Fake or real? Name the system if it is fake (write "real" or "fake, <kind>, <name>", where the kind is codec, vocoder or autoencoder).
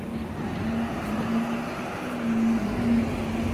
real